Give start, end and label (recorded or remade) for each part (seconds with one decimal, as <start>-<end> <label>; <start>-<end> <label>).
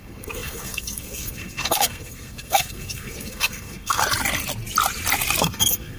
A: 0.0-4.0 remade; 4.0-5.4 recorded; 5.4-6.0 remade